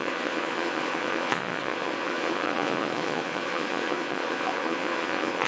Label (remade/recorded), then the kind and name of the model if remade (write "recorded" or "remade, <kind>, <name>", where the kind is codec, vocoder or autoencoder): remade, vocoder, Vocos